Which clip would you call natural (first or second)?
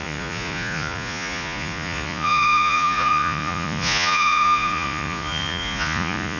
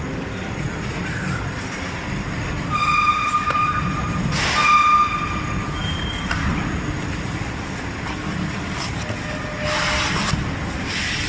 second